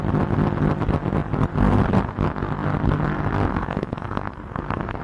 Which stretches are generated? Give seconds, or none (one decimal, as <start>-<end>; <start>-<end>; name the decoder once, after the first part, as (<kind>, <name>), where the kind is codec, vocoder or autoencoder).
3.5-5.0 (codec, SNAC)